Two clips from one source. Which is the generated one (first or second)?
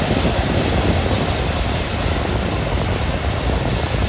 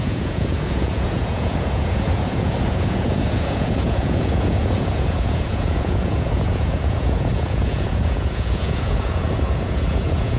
second